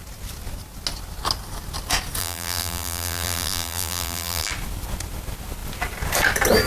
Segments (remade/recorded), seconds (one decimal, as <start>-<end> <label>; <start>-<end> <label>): 0.0-2.2 recorded; 2.2-4.5 remade; 4.5-6.7 recorded